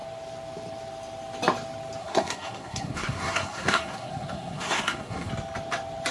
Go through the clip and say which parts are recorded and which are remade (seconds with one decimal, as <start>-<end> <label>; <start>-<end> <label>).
0.0-2.0 recorded; 2.0-5.3 remade; 5.3-6.1 recorded